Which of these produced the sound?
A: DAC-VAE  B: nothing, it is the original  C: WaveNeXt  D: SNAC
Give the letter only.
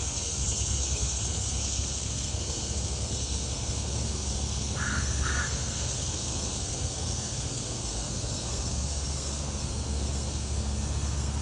D